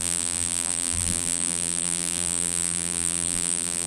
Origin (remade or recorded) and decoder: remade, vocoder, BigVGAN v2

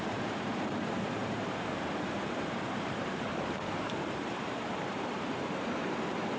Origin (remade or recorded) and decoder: remade, vocoder, BigVGAN v2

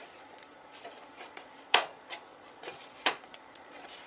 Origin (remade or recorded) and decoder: remade, vocoder, Vocos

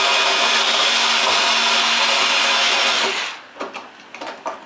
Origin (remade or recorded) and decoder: recorded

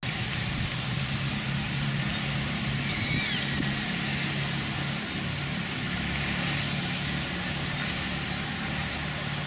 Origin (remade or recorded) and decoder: recorded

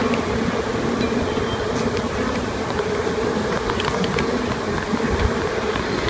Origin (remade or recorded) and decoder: recorded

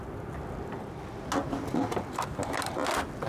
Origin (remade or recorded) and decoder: recorded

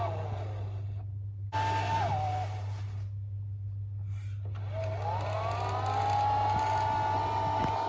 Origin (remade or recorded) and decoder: recorded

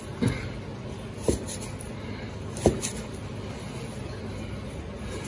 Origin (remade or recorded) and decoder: recorded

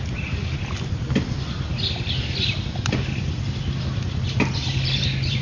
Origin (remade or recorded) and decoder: recorded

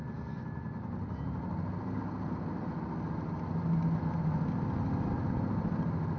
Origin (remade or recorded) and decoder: recorded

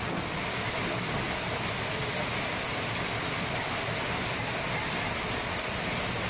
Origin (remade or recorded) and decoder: recorded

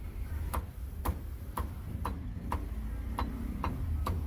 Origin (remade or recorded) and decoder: recorded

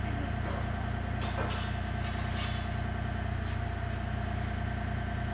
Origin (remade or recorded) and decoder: recorded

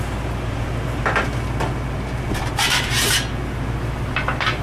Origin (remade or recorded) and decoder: recorded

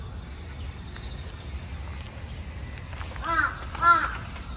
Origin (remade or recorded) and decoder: recorded